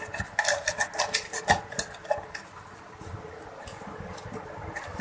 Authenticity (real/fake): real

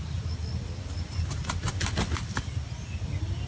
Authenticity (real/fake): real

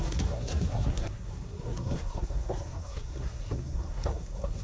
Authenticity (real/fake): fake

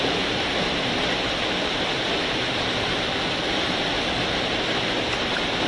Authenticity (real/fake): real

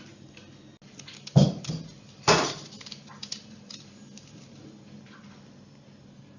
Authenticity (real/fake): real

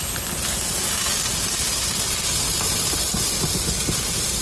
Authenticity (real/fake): real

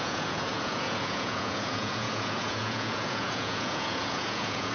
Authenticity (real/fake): fake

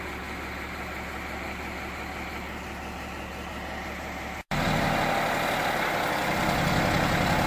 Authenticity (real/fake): real